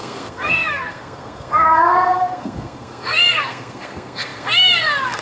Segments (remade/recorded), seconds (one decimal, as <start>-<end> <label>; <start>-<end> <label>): 0.0-5.2 remade